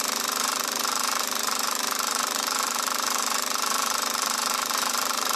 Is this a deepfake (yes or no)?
yes